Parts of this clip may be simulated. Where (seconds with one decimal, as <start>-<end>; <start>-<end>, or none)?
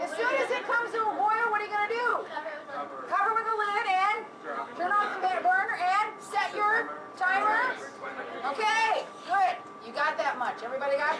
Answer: 2.1-2.7; 3.5-5.3; 8.8-9.6